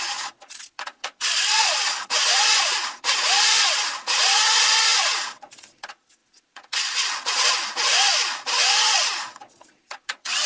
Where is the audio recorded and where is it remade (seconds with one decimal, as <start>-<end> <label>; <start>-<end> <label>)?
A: 0.0-10.5 remade